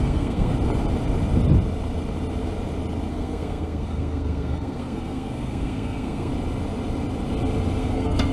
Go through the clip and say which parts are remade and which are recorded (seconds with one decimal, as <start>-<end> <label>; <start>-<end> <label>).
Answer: 0.0-0.5 remade; 0.5-3.1 recorded; 3.1-6.3 remade; 6.3-7.8 recorded; 7.8-8.3 remade